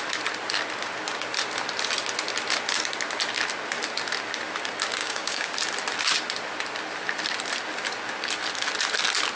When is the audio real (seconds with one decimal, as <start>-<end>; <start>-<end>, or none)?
0.0-5.0; 5.5-9.4